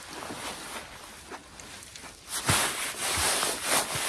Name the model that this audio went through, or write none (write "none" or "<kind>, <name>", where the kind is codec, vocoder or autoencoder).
none